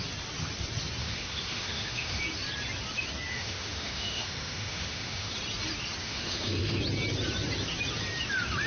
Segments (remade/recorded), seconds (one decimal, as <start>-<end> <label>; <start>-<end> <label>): 0.0-1.0 recorded; 1.0-2.2 remade; 2.2-3.3 recorded; 3.3-5.3 remade; 5.3-6.0 recorded; 6.0-6.8 remade; 6.8-8.7 recorded